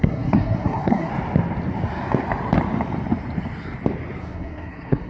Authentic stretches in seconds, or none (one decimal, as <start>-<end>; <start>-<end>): 1.1-4.2